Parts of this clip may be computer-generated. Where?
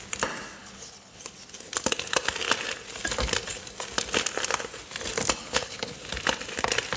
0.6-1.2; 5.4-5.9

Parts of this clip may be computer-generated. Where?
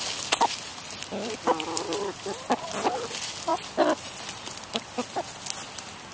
none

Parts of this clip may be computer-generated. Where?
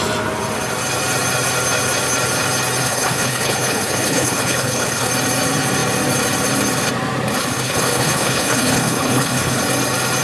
2.8-5.1; 7.4-9.6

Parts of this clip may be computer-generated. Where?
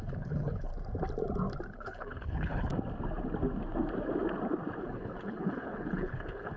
0.0-0.7; 1.7-2.7; 4.8-6.6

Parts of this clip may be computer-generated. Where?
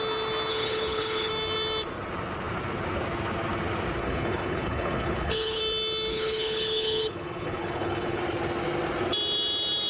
0.5-1.3; 4.0-5.6; 6.1-8.2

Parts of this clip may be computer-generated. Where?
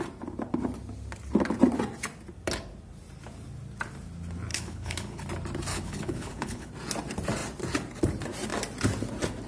4.5-5.2; 5.7-6.7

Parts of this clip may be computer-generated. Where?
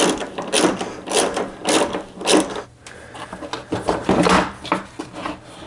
none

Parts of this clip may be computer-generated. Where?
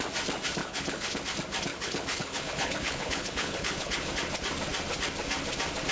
0.6-1.2; 1.7-4.1